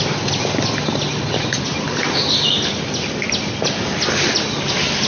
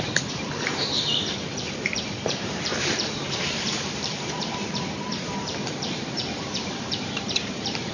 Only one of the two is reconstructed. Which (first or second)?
second